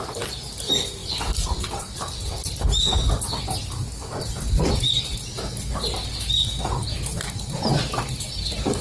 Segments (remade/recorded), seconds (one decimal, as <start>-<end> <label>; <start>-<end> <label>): 0.0-8.8 recorded